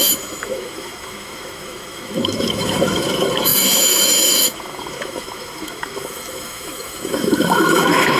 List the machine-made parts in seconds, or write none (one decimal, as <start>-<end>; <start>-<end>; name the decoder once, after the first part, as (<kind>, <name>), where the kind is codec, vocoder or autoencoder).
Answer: 0.0-8.2 (autoencoder, DAC-VAE)